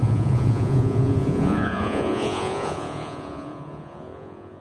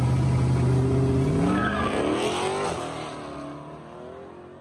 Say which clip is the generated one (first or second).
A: first